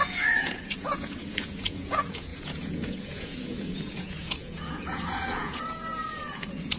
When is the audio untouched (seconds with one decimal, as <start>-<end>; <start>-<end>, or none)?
none